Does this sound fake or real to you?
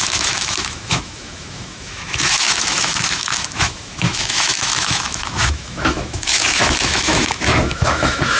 fake